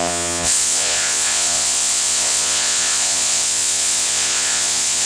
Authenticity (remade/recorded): remade